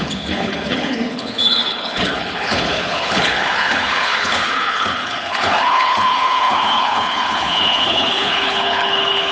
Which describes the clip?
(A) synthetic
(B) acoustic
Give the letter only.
A